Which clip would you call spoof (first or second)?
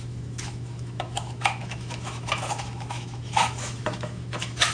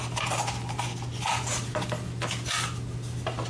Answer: first